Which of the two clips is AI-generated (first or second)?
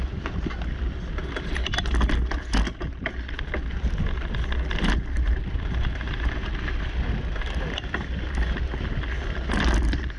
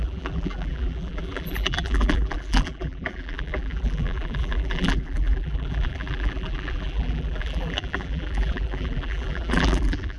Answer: second